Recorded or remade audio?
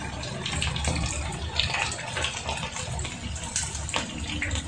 remade